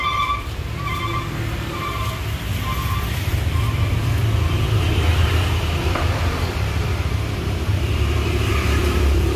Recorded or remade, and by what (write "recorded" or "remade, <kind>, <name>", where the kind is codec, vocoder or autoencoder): remade, vocoder, BigVGAN v2